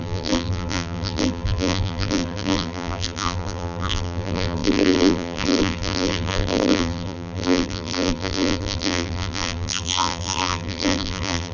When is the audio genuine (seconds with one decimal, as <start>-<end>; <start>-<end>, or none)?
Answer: none